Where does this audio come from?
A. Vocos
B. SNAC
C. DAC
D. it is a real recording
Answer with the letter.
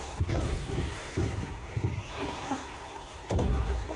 B